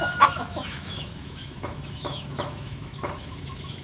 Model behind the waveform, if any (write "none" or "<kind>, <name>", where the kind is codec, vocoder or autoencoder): autoencoder, DAC-VAE